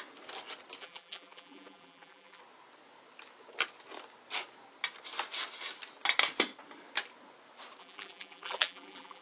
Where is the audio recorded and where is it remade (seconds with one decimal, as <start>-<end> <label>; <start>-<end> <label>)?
0.0-0.8 recorded; 0.8-2.4 remade; 2.4-7.8 recorded; 7.8-9.2 remade